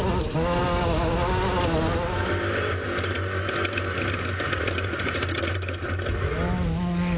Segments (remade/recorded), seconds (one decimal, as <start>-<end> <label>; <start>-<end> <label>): 0.0-0.6 recorded; 0.6-1.1 remade; 1.1-7.2 recorded